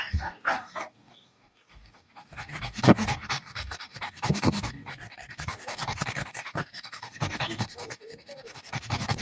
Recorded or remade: remade